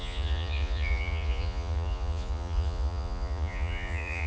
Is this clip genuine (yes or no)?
no